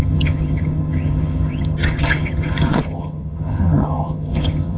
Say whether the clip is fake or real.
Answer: fake